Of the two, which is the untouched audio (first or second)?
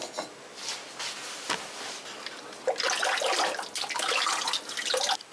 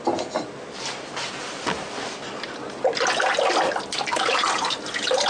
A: first